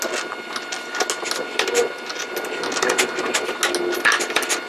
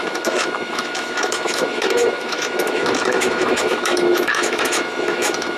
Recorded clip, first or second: first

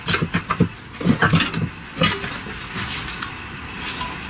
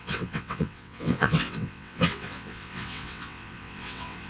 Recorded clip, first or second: first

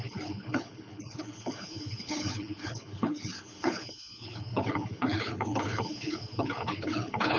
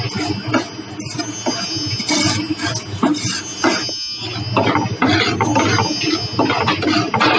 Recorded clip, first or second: second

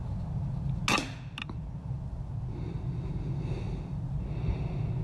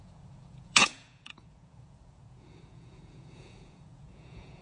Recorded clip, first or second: first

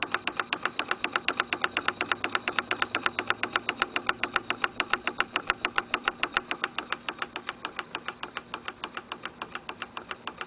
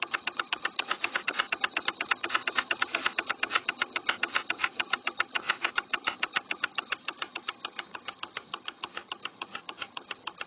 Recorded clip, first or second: first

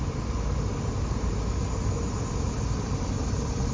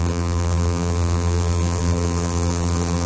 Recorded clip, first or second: first